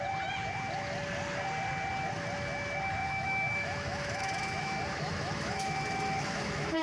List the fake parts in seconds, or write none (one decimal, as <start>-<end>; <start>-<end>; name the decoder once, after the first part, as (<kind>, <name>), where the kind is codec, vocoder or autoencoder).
3.0-6.8 (autoencoder, DAC-VAE)